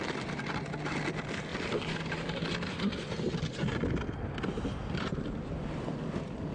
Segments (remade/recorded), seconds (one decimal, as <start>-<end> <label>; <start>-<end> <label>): 0.0-6.5 recorded